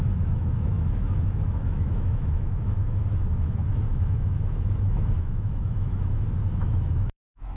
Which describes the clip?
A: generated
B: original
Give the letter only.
A